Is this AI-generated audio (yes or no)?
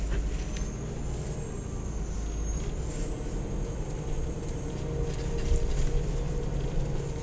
no